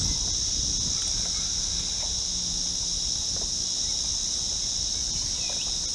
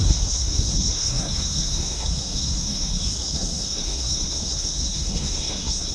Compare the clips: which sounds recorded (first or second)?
first